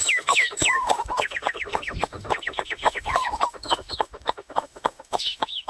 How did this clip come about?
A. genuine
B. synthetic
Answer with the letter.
B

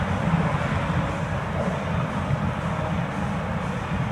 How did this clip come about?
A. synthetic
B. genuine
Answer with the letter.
B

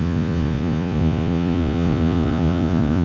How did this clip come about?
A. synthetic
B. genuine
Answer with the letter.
A